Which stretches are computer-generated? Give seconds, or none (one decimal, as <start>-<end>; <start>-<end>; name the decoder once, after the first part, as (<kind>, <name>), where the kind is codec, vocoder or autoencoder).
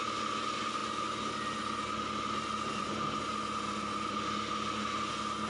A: none